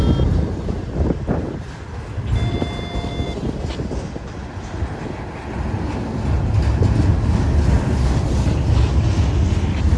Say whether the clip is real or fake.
real